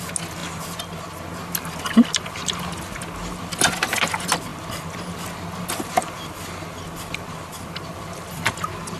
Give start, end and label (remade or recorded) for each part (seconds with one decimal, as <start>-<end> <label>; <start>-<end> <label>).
0.0-9.0 recorded